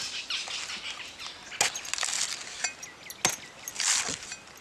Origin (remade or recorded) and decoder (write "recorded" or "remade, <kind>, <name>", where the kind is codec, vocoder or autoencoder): recorded